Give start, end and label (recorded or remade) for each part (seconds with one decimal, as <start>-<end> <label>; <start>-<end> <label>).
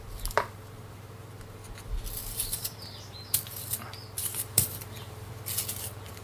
0.0-2.2 recorded; 2.2-3.4 remade; 3.4-4.2 recorded; 4.2-5.3 remade; 5.3-6.2 recorded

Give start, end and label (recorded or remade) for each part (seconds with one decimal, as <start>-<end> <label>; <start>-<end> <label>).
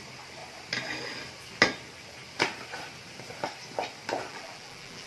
0.0-4.3 recorded; 4.3-5.1 remade